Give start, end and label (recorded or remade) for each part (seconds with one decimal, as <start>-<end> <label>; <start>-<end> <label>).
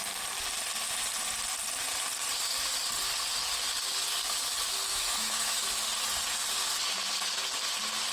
0.0-4.9 recorded; 4.9-5.7 remade; 5.7-8.1 recorded